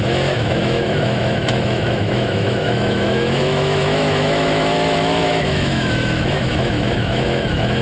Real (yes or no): no